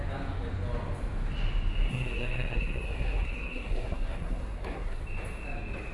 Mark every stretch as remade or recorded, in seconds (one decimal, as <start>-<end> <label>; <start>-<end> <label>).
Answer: 0.0-1.9 recorded; 1.9-5.0 remade; 5.0-5.9 recorded